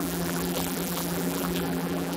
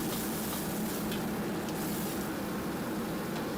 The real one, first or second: second